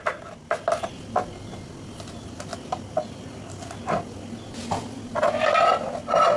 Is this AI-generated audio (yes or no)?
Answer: no